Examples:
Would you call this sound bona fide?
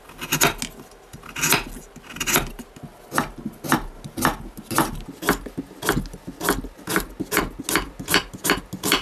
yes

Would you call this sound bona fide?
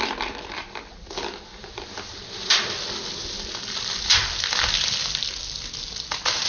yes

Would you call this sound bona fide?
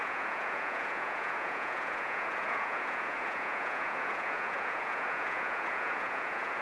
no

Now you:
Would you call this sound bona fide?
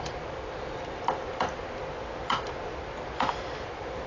yes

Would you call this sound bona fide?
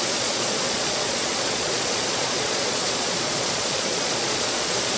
no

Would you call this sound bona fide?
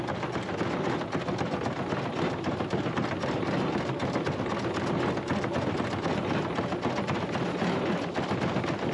yes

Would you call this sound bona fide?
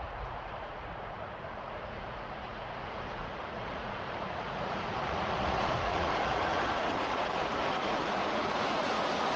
no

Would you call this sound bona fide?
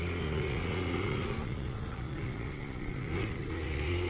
no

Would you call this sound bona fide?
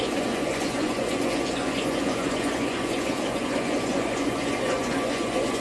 no